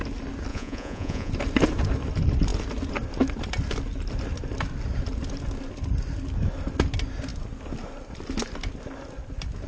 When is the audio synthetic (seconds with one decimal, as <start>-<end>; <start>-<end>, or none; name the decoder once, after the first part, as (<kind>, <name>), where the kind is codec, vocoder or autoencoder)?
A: 0.5-1.3 (vocoder, Vocos)